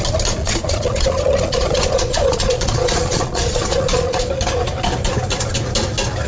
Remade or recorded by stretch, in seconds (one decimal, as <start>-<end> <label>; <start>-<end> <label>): 0.0-0.4 recorded; 0.4-4.2 remade; 4.2-6.3 recorded